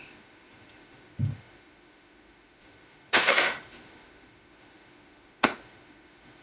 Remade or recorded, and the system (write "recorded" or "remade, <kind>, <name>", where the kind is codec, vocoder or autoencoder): remade, autoencoder, DAC-VAE